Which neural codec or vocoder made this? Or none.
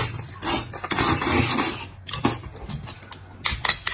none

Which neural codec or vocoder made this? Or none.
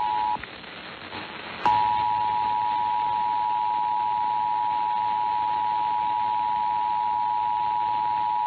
none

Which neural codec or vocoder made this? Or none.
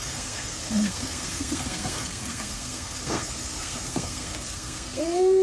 codec, SNAC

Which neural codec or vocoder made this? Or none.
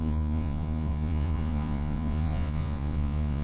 vocoder, Vocos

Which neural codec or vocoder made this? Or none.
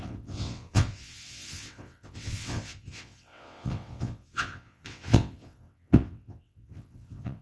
vocoder, WaveNeXt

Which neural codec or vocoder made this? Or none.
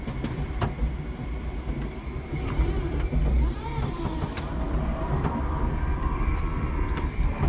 vocoder, BigVGAN v2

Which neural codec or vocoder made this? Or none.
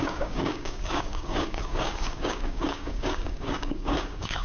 codec, DAC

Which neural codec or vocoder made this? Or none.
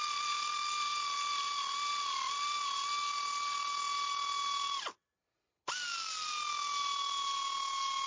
none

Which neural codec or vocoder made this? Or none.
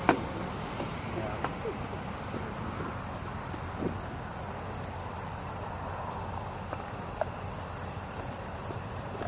none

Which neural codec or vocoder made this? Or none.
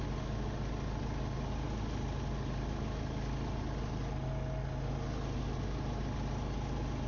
none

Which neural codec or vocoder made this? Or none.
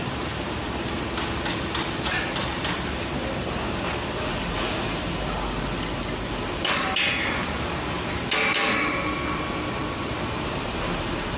none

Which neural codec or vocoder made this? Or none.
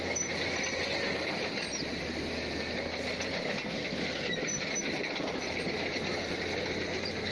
none